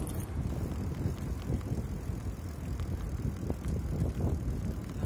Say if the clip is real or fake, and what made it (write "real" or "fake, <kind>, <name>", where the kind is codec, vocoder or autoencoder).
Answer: real